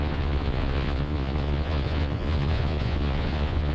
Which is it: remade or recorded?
remade